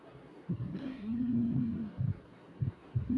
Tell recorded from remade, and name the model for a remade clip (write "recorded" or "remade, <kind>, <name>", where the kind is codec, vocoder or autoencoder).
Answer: remade, codec, SNAC